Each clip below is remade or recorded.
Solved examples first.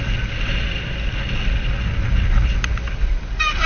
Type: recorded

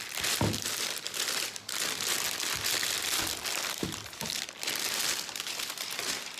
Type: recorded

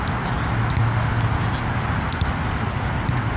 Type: recorded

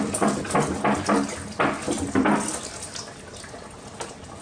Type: recorded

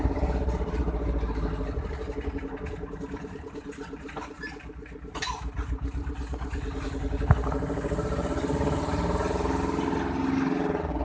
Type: recorded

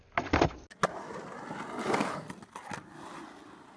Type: recorded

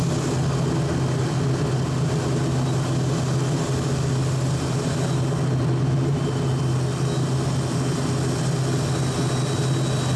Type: recorded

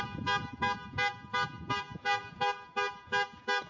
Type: recorded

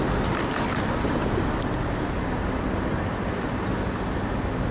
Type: recorded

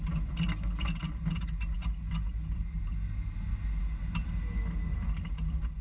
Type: recorded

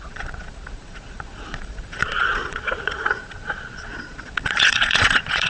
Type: remade